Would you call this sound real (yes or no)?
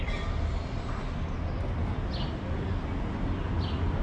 yes